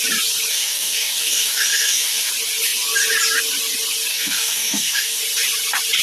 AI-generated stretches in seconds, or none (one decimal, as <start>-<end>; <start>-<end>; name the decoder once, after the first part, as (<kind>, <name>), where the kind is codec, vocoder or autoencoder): 0.5-2.3 (codec, DAC); 4.1-5.2